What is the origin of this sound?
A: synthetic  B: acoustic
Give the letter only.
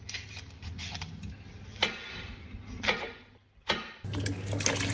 B